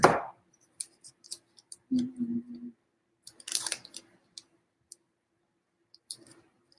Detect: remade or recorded remade